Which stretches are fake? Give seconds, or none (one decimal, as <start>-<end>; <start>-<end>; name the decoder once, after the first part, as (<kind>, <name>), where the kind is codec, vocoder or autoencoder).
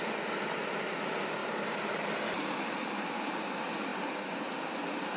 1.4-2.4 (vocoder, BigVGAN v2)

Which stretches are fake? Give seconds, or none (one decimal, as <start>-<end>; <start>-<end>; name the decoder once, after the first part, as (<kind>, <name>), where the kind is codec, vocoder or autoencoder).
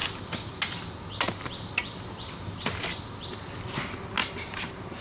4.2-5.0 (vocoder, BigVGAN v2)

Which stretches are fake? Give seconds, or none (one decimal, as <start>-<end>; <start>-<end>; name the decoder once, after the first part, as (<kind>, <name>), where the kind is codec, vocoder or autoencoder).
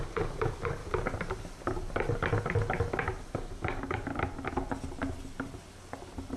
0.0-0.8 (codec, DAC); 3.3-4.1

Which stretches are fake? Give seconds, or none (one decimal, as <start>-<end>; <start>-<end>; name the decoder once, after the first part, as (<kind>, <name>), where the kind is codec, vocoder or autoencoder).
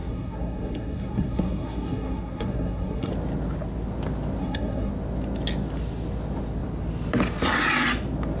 0.0-3.1 (codec, SNAC); 4.4-4.9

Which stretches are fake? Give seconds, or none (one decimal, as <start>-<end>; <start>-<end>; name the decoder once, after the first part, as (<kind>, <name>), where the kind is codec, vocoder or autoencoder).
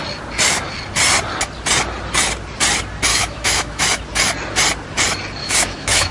3.1-4.0 (autoencoder, DAC-VAE); 5.4-6.1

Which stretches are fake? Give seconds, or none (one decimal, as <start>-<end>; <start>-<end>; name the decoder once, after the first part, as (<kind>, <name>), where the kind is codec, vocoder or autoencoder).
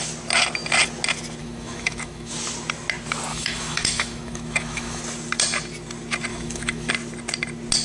1.4-2.3 (autoencoder, DAC-VAE); 3.3-5.0; 6.3-6.9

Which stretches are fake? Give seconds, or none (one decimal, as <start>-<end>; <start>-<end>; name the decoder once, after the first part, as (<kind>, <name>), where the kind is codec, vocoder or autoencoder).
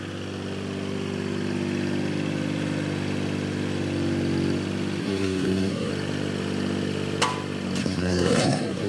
5.0-5.9 (codec, SNAC); 7.8-8.9